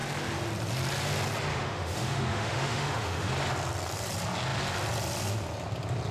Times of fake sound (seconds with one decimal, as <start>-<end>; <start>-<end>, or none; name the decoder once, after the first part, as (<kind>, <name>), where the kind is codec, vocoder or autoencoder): 1.5-3.3 (autoencoder, DAC-VAE)